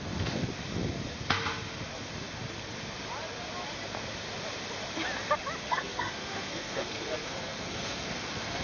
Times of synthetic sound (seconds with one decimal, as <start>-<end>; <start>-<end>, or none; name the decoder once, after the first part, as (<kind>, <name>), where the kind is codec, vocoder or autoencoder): 0.0-0.5 (codec, SNAC); 5.7-8.6